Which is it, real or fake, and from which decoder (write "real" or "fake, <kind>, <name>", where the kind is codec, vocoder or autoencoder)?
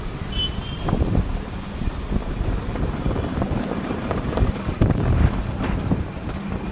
fake, vocoder, BigVGAN v2